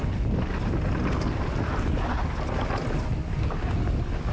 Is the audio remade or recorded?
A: recorded